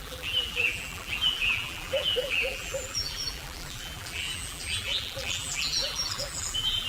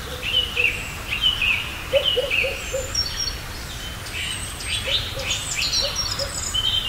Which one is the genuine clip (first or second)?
second